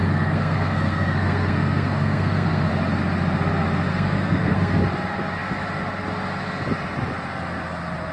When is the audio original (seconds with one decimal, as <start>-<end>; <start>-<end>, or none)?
2.7-3.9; 4.8-8.1